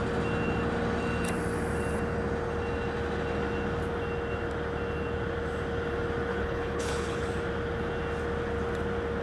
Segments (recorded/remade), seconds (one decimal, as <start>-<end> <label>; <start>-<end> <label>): 0.0-6.3 recorded; 6.3-7.3 remade; 7.3-9.2 recorded